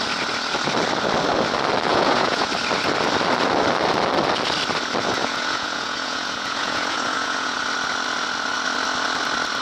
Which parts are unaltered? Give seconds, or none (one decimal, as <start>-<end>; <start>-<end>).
0.0-1.9; 2.5-5.2; 7.6-9.6